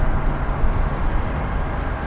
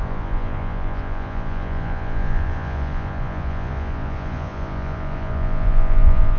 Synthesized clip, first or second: second